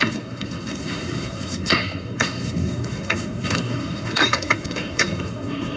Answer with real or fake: fake